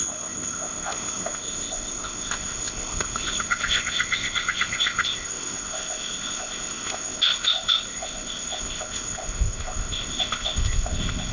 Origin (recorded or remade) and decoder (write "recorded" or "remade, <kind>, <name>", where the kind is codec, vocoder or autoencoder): remade, codec, ZipCodec